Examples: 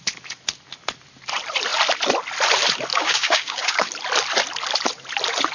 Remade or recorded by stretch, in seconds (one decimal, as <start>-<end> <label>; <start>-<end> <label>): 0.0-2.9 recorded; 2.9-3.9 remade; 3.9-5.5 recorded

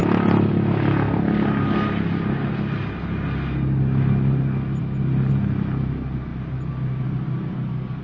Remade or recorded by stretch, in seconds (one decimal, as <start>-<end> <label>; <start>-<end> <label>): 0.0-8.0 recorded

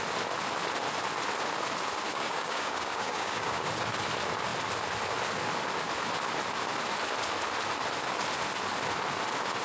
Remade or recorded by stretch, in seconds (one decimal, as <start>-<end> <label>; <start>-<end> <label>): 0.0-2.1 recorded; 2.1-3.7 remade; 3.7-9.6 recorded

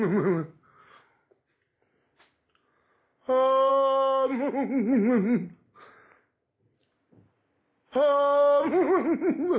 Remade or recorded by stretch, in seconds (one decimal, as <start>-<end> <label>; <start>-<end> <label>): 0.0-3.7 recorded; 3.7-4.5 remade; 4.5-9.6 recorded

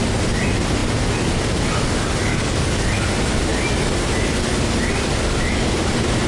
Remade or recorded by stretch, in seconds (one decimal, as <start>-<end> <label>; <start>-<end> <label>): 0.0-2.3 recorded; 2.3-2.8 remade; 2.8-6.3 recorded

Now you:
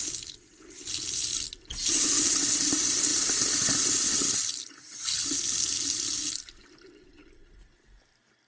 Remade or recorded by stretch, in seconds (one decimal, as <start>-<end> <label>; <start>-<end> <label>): 0.0-8.5 recorded